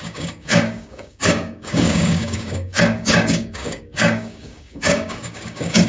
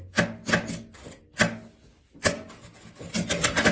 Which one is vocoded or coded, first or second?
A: first